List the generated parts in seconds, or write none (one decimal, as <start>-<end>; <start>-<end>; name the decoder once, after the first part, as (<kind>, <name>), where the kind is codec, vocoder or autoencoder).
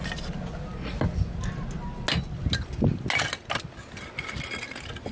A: none